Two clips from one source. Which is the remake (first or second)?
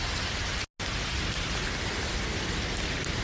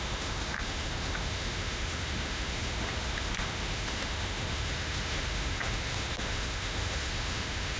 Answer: second